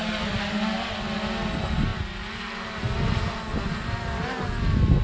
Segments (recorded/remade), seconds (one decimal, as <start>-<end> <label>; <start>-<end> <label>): 0.0-5.0 recorded